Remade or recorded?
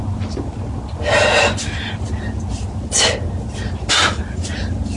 recorded